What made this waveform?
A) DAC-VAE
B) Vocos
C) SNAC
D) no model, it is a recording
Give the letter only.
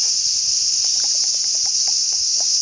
B